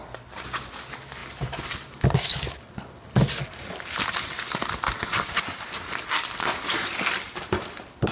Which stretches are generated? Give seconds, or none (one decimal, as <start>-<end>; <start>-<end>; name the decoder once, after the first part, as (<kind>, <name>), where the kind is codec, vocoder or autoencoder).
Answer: none